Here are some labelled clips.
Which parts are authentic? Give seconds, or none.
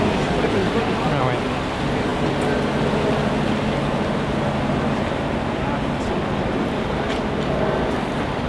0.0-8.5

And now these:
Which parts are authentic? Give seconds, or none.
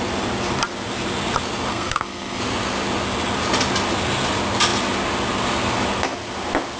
0.0-1.7; 2.4-6.8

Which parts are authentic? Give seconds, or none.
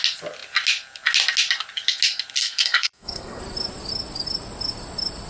0.0-2.4; 3.4-5.3